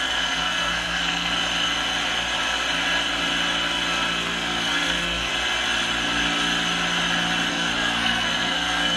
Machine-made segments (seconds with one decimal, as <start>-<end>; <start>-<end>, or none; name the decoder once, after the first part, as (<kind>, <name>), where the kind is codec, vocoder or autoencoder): 0.0-1.3 (codec, SNAC); 4.2-5.3; 7.5-9.0